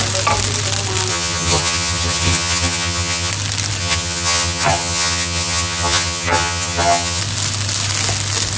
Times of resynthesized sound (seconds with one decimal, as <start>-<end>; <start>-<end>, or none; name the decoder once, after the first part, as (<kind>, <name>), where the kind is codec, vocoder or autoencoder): 1.1-3.3 (vocoder, HiFi-GAN); 3.8-7.2

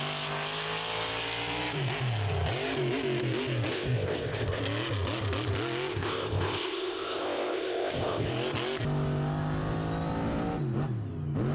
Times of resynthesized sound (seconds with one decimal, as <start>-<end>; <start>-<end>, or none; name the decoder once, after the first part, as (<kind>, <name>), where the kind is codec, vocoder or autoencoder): 3.7-4.6 (codec, ZipCodec); 5.9-8.3

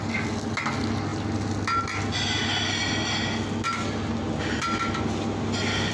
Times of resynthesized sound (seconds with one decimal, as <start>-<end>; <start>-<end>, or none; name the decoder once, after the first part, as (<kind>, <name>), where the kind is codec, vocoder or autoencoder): none

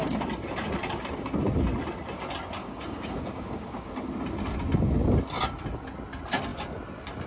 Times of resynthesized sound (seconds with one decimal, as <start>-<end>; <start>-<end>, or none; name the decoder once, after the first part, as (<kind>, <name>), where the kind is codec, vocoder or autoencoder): 2.6-3.9 (codec, DAC)

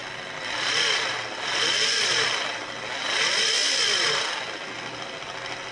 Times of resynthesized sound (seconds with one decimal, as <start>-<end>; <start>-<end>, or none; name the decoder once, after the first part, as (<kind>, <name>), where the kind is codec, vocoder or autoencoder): none

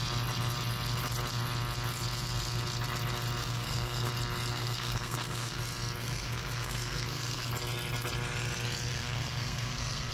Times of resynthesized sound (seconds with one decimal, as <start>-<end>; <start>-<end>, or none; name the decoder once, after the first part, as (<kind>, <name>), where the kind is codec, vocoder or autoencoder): 3.4-4.1 (codec, SNAC); 4.5-5.6; 6.0-7.5; 8.9-10.1

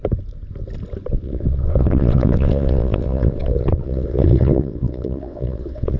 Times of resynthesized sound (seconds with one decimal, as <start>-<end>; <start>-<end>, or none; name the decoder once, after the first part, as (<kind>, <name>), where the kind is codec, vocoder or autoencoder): 1.1-6.0 (vocoder, WaveNeXt)